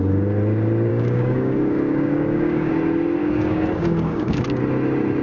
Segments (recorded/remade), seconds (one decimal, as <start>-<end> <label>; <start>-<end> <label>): 0.0-0.9 recorded; 0.9-2.7 remade; 2.7-3.2 recorded; 3.2-4.4 remade; 4.4-5.2 recorded